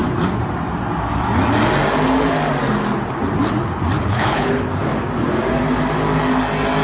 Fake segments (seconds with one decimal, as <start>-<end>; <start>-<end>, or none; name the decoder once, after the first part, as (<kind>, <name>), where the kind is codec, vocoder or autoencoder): 4.0-4.6 (codec, HILCodec)